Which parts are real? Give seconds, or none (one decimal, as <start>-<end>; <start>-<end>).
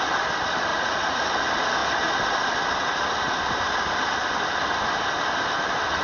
0.0-0.7; 1.2-6.0